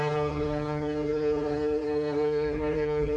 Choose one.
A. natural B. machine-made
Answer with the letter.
B